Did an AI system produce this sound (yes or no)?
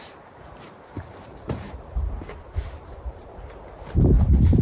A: yes